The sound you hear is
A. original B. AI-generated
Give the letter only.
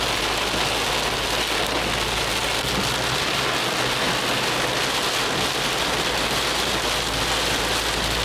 A